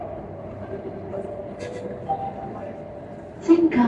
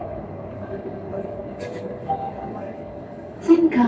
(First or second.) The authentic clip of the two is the first